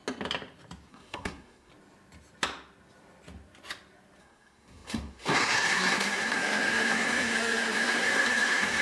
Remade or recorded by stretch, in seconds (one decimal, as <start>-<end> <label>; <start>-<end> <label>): 0.0-0.9 recorded; 0.9-1.7 remade; 1.7-4.2 recorded; 4.2-8.8 remade